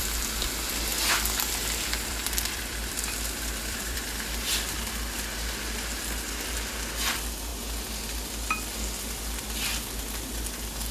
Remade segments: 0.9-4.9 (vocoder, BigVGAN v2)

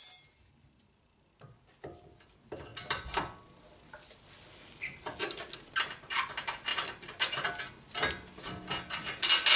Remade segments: none

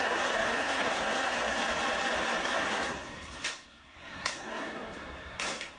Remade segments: 0.0-1.6 (codec, SNAC); 2.4-5.8

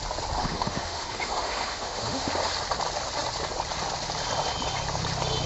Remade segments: 0.4-2.3 (autoencoder, DAC-VAE)

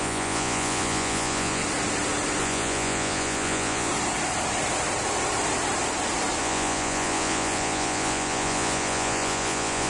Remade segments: 0.0-1.6 (vocoder, Vocos); 2.4-3.9; 6.4-9.9

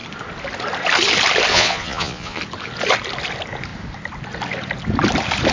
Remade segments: 1.5-2.4 (vocoder, Vocos)